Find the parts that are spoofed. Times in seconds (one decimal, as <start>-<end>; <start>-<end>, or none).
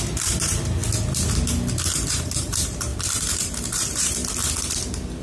0.0-0.8; 2.1-2.9; 3.7-4.2